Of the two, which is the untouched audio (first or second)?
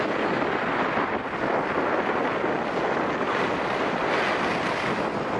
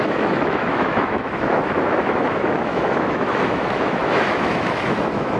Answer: first